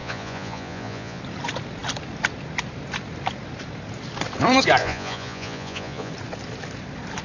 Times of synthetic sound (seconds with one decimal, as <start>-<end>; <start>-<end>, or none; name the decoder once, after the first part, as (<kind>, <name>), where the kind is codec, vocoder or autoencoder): 0.0-1.2 (vocoder, Vocos); 4.8-6.1